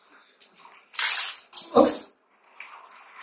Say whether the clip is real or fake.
real